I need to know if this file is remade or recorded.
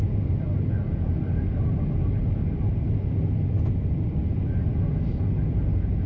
recorded